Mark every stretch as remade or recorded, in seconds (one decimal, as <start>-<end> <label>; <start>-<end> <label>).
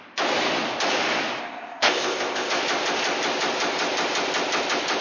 0.0-1.4 recorded; 1.4-2.5 remade; 2.5-5.0 recorded